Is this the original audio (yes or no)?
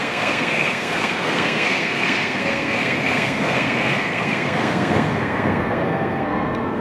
no